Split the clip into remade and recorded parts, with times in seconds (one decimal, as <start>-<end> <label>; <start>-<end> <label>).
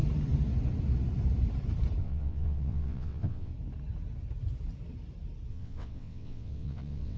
0.0-2.0 recorded; 2.0-3.5 remade; 3.5-5.5 recorded; 5.5-7.2 remade